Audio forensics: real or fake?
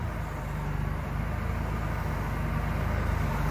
real